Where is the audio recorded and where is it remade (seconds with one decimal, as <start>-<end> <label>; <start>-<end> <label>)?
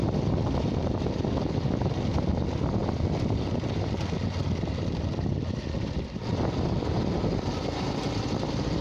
0.0-8.8 recorded